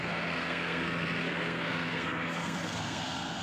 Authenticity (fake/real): fake